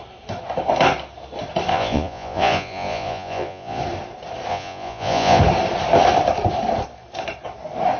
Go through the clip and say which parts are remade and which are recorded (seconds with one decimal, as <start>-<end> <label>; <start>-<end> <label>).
0.0-1.7 recorded; 1.7-3.8 remade; 3.8-4.5 recorded; 4.5-5.4 remade; 5.4-8.0 recorded